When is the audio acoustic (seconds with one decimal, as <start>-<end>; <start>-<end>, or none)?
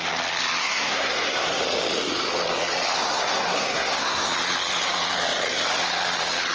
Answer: 0.0-0.6; 1.6-3.0; 4.3-6.5